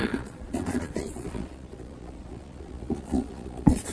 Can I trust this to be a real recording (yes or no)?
no